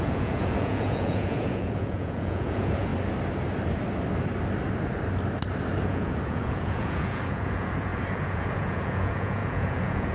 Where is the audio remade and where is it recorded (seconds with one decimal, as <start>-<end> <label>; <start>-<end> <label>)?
0.0-2.9 remade; 2.9-5.8 recorded; 5.8-10.1 remade